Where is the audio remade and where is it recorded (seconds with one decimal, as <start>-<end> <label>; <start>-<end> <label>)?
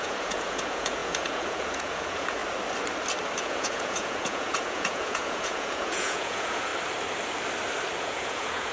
0.0-2.4 remade; 2.4-3.4 recorded; 3.4-6.7 remade; 6.7-8.0 recorded; 8.0-8.7 remade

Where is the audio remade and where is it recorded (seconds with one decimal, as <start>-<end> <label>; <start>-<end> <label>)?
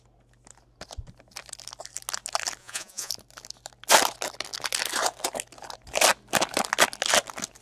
0.0-2.6 recorded; 2.6-3.1 remade; 3.1-7.6 recorded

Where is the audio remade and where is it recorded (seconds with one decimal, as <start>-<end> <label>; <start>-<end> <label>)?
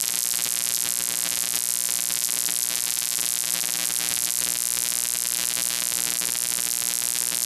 0.0-7.5 recorded